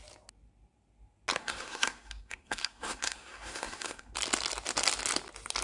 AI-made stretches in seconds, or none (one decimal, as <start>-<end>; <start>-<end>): 1.4-4.1